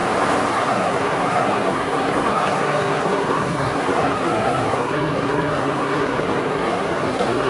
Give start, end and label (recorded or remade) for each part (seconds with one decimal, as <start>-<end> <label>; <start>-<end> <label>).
0.0-0.5 recorded; 0.5-7.5 remade

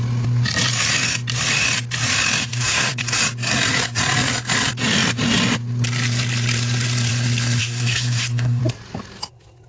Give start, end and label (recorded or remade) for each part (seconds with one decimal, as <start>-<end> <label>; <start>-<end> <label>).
0.0-2.5 recorded; 2.5-3.2 remade; 3.2-7.6 recorded; 7.6-8.6 remade; 8.6-9.7 recorded

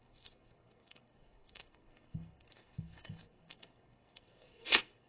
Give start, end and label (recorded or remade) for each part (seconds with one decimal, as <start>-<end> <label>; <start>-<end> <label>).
0.0-5.1 remade

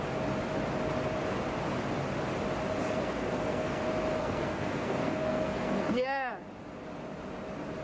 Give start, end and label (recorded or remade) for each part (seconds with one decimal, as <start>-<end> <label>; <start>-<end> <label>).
0.0-2.8 recorded; 2.8-3.8 remade; 3.8-4.2 recorded; 4.2-6.3 remade; 6.3-7.8 recorded

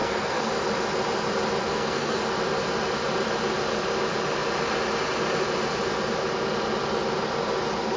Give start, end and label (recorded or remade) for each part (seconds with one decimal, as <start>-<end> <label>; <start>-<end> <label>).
0.0-0.5 remade; 0.5-1.6 recorded; 1.6-2.2 remade; 2.2-8.0 recorded

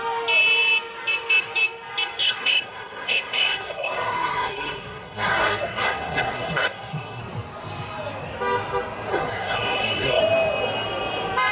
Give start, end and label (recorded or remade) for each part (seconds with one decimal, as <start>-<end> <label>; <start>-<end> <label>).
0.0-2.2 recorded; 2.2-7.2 remade; 7.2-9.1 recorded; 9.1-10.2 remade; 10.2-11.5 recorded